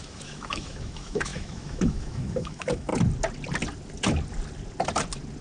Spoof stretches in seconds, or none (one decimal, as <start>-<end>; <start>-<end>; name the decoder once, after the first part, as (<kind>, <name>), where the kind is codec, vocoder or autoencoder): 0.0-2.9 (autoencoder, DAC-VAE)

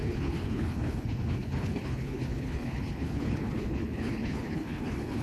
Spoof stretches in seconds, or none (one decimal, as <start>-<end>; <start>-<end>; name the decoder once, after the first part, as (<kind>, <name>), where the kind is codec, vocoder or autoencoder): 0.0-5.2 (codec, HILCodec)

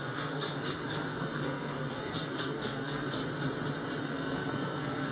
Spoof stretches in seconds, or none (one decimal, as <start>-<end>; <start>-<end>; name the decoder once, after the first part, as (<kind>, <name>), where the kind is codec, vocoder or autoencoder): 0.0-3.2 (codec, SNAC); 4.0-5.1

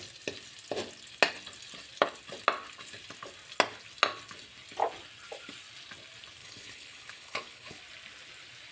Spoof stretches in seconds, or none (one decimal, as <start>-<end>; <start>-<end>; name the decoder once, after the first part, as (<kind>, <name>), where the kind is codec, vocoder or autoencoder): 6.4-7.8 (codec, HILCodec)

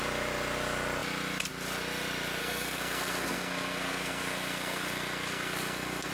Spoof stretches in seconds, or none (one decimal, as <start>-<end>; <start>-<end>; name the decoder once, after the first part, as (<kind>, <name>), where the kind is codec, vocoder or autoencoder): 2.4-6.1 (codec, SNAC)

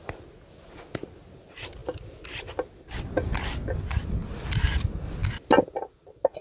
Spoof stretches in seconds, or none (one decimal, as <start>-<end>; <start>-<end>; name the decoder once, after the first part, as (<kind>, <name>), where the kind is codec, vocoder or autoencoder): none